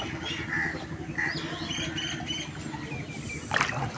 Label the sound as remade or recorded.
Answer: recorded